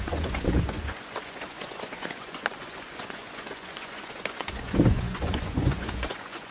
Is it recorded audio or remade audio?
remade